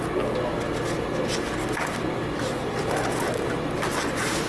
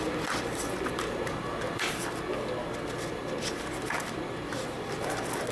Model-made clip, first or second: second